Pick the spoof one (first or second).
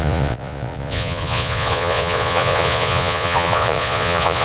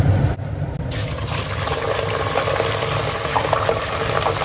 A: first